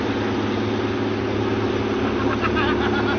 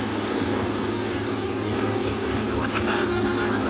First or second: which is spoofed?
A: second